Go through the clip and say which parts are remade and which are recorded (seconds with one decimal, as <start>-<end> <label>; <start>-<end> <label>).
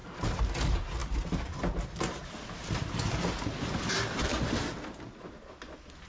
0.0-6.1 recorded